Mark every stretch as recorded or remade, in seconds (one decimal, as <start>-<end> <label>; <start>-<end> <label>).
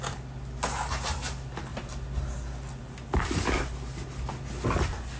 0.0-5.2 recorded